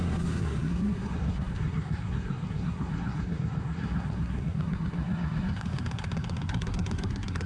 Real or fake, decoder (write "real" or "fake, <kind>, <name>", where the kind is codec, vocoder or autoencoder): fake, codec, SNAC